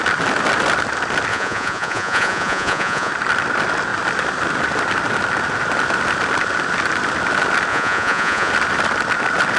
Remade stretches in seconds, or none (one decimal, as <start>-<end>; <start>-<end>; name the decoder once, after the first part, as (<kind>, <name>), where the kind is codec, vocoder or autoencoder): 1.3-3.1 (vocoder, Vocos); 7.7-8.5